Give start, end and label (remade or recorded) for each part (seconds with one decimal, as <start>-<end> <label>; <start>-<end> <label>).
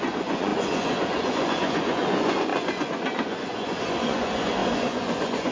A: 0.0-5.5 remade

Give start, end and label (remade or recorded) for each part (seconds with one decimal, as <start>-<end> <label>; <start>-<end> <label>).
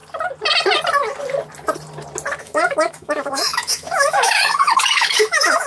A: 0.0-2.4 recorded; 2.4-5.7 remade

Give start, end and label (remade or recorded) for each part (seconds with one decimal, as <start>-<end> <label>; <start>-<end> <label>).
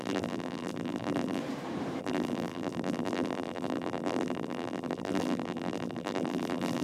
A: 0.0-1.4 remade; 1.4-2.0 recorded; 2.0-6.8 remade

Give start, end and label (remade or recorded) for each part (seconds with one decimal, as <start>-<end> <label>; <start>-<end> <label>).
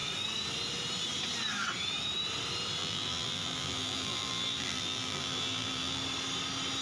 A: 0.0-2.8 recorded; 2.8-6.0 remade; 6.0-6.8 recorded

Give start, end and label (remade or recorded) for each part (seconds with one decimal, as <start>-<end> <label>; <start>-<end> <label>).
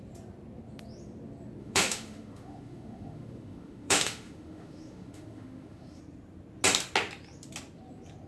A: 0.0-1.6 recorded; 1.6-6.0 remade; 6.0-8.3 recorded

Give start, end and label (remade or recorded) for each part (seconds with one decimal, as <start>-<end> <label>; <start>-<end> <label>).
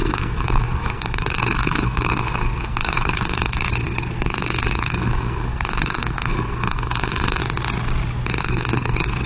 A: 0.0-7.4 remade; 7.4-8.4 recorded; 8.4-9.3 remade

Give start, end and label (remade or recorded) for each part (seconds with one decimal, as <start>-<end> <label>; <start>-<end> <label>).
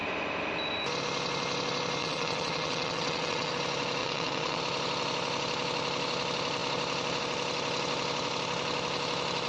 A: 0.0-2.0 recorded; 2.0-3.5 remade; 3.5-4.0 recorded; 4.0-4.6 remade; 4.6-9.5 recorded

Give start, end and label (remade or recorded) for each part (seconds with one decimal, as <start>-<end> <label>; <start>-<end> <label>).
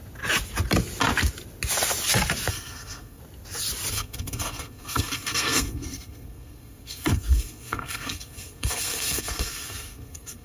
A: 0.0-2.5 recorded; 2.5-3.2 remade; 3.2-3.9 recorded; 3.9-10.4 remade